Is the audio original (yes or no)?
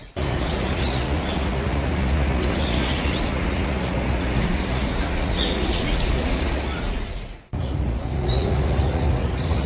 no